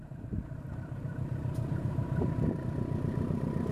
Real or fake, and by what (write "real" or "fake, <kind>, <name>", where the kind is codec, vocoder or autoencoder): fake, vocoder, BigVGAN v2